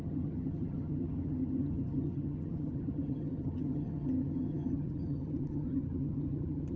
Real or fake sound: fake